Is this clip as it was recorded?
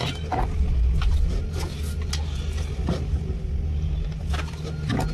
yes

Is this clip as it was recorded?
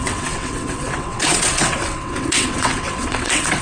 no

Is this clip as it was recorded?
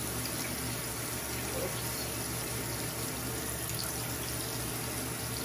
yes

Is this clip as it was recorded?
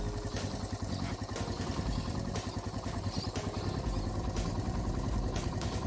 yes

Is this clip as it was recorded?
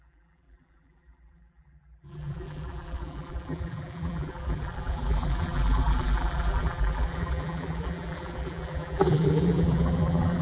no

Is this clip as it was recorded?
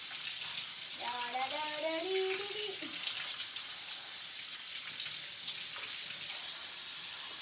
yes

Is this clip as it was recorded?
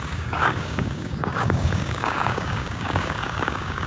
no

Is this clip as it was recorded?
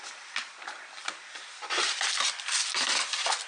yes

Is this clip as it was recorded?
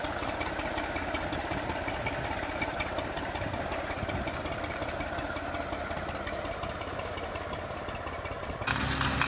yes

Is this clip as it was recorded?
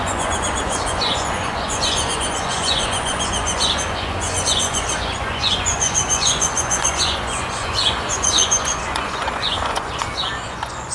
no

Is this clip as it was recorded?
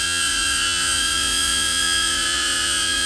no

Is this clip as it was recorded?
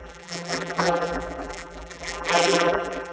no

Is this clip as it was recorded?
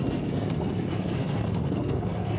no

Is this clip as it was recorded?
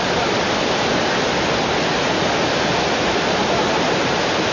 yes